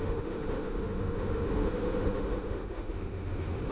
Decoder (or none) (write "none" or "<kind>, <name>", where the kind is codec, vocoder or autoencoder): autoencoder, DAC-VAE